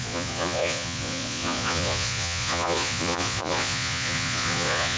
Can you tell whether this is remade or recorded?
remade